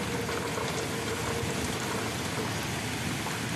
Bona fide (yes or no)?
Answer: yes